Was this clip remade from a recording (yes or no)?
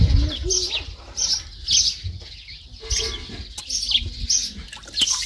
no